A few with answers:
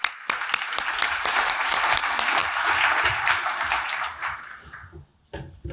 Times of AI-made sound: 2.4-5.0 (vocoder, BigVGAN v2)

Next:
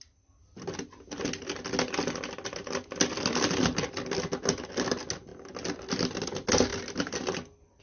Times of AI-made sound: 6.7-7.8 (vocoder, BigVGAN v2)

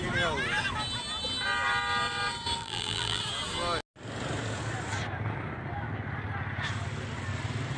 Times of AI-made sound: 2.6-3.2 (vocoder, BigVGAN v2)